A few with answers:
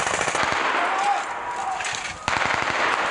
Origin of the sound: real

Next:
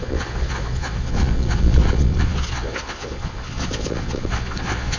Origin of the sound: fake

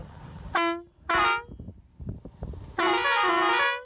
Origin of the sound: real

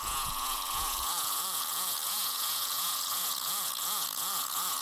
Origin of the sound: fake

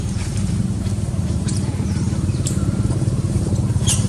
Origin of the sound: fake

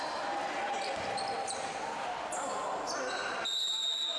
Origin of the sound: real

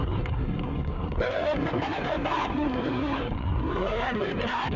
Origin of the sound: fake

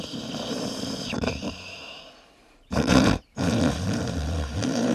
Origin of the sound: fake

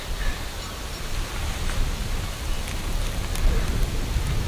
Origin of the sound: real